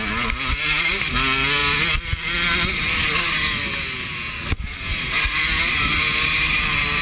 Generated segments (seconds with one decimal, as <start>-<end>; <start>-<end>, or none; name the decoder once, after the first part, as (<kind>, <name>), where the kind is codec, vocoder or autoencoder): none